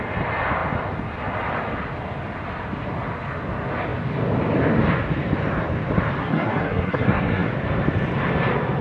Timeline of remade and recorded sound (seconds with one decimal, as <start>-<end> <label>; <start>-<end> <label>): 0.0-6.2 recorded; 6.2-7.5 remade; 7.5-8.8 recorded